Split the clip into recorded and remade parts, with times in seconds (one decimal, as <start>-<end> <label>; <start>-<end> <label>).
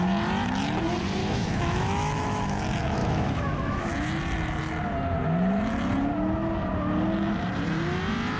0.0-1.2 recorded; 1.2-2.6 remade; 2.6-3.0 recorded; 3.0-3.9 remade; 3.9-8.4 recorded